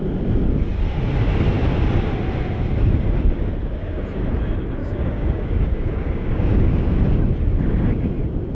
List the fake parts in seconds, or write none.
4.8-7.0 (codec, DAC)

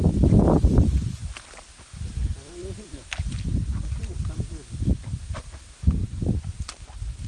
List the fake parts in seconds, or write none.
0.0-7.3 (vocoder, BigVGAN v2)

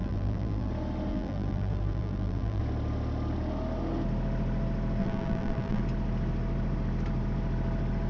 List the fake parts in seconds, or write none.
0.0-0.7 (vocoder, BigVGAN v2); 1.1-2.6; 5.0-5.8

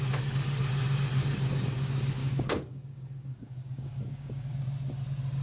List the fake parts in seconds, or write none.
2.2-4.5 (codec, DAC)

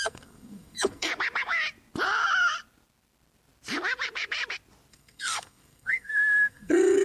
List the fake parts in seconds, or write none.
0.0-1.1 (codec, SNAC); 4.9-7.0